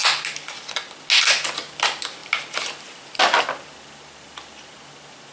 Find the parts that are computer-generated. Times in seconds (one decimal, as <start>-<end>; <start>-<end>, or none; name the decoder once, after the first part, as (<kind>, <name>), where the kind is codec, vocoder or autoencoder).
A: none